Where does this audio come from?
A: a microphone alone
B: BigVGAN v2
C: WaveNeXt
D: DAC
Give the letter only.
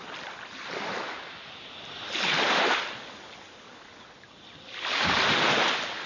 A